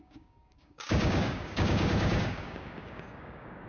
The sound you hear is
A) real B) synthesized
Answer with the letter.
B